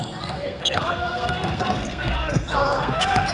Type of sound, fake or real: fake